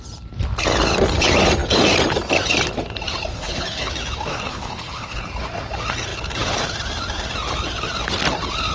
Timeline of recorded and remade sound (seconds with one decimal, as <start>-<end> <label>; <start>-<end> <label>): 0.0-3.3 recorded; 3.3-3.9 remade; 3.9-4.3 recorded; 4.3-5.3 remade; 5.3-8.7 recorded

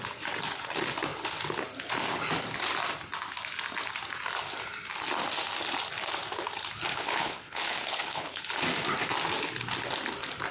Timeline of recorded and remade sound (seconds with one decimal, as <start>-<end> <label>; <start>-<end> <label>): 0.0-6.9 recorded; 6.9-8.4 remade; 8.4-10.5 recorded

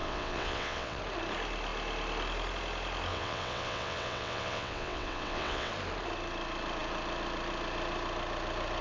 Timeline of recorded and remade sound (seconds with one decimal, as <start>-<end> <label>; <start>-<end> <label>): 0.0-1.0 remade; 1.0-3.1 recorded; 3.1-5.7 remade; 5.7-8.8 recorded

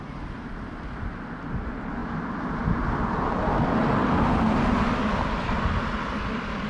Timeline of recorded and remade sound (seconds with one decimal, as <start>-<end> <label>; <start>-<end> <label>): 0.0-6.7 recorded